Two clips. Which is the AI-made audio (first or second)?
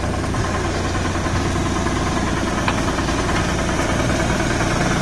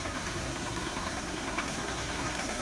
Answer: second